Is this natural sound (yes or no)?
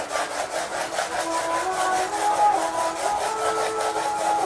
yes